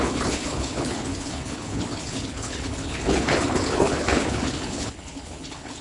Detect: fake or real fake